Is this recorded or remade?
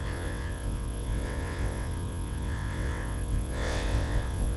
remade